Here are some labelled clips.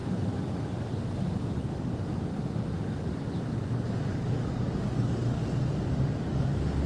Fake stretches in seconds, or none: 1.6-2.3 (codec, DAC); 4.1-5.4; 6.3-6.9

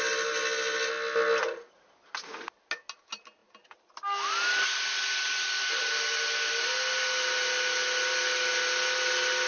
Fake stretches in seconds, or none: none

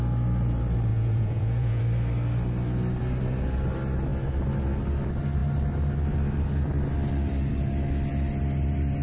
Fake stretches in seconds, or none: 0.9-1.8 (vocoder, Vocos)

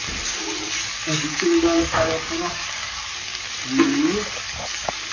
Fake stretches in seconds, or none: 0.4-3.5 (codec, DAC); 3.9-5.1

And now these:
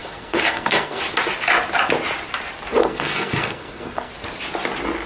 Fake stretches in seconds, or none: 0.0-1.0 (codec, SNAC); 2.8-4.1

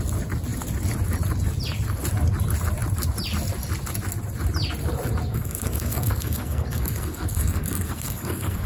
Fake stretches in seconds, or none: 5.3-8.7 (codec, SNAC)

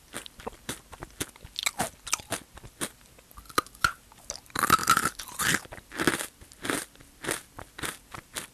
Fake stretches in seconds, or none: none